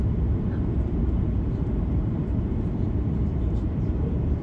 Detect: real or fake fake